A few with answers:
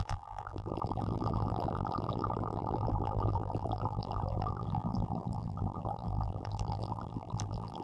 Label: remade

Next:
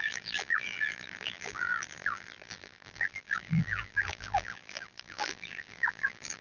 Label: remade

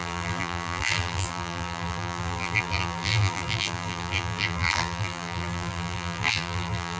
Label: remade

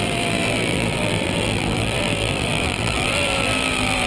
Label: remade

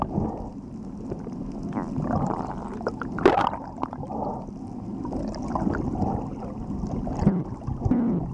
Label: recorded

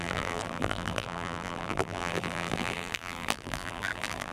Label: remade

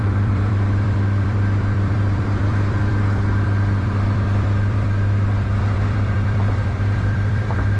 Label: remade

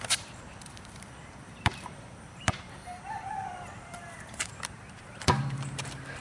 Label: remade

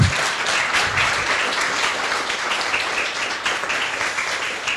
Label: recorded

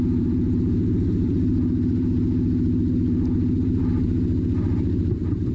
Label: remade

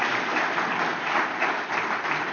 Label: remade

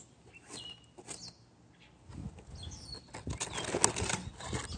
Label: recorded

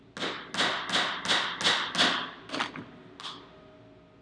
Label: recorded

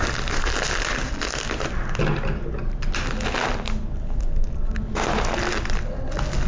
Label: recorded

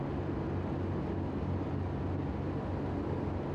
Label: recorded